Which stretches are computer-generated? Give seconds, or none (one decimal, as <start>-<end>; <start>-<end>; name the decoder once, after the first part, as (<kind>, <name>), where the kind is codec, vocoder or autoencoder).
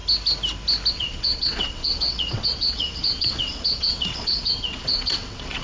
0.9-5.6 (vocoder, WaveNeXt)